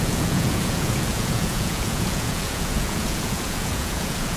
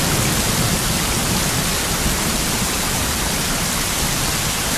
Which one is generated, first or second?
first